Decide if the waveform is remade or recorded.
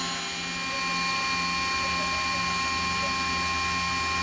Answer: recorded